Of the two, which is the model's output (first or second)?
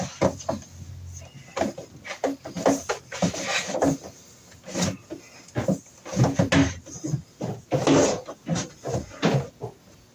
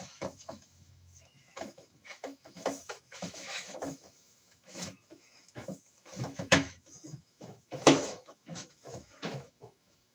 second